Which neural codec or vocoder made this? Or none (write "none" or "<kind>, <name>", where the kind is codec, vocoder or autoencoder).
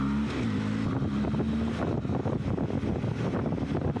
none